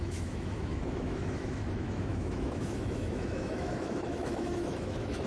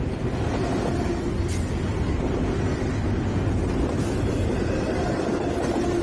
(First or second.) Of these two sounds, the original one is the second